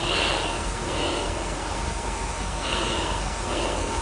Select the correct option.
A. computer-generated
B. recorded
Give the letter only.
A